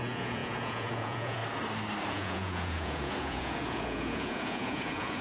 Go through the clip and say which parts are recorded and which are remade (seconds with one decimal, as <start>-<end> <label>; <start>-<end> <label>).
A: 0.0-1.4 remade; 1.4-2.1 recorded; 2.1-5.2 remade